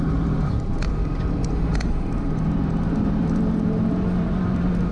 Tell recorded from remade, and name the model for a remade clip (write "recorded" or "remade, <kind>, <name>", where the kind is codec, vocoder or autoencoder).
remade, vocoder, BigVGAN v2